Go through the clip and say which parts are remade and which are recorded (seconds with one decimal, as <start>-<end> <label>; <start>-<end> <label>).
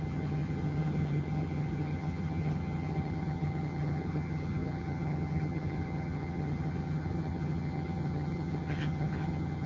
0.0-9.7 remade